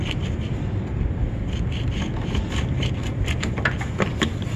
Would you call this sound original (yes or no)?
yes